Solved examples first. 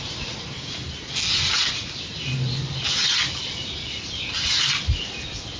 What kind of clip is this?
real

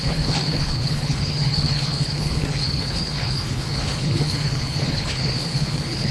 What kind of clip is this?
fake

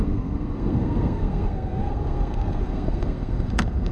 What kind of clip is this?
fake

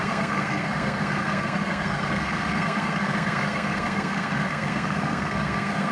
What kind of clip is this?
fake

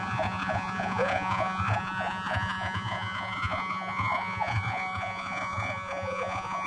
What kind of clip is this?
fake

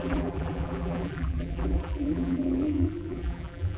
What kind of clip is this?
fake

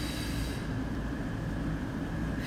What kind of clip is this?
real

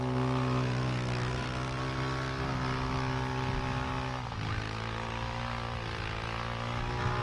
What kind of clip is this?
real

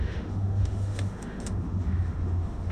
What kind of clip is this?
fake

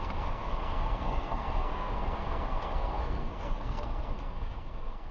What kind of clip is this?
fake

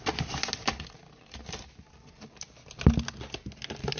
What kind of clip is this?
real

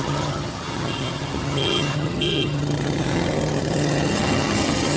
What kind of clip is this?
fake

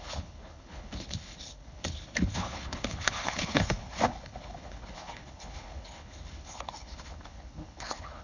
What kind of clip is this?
fake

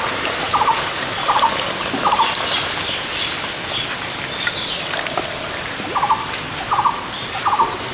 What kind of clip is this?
real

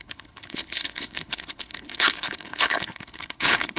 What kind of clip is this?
fake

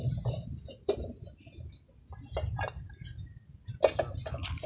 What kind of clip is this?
real